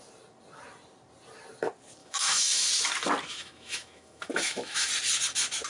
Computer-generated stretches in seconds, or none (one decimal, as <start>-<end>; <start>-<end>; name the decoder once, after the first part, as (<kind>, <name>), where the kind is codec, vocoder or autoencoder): 2.0-2.7 (autoencoder, DAC-VAE); 3.3-4.9